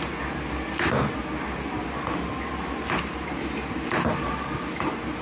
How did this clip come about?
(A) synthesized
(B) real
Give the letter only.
B